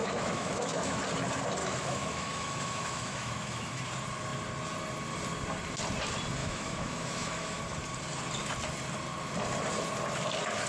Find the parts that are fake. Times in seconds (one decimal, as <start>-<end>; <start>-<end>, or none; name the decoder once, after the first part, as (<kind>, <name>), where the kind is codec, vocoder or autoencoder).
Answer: 0.0-1.0 (autoencoder, DAC-VAE); 1.6-3.8; 6.4-7.6